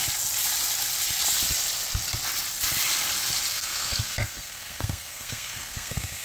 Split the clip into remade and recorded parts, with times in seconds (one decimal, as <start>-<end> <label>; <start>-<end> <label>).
0.0-3.5 recorded; 3.5-6.2 remade